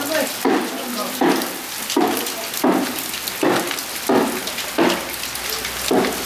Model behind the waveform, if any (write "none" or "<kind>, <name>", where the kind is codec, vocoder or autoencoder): none